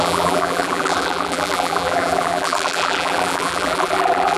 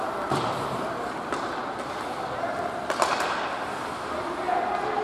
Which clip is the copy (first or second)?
first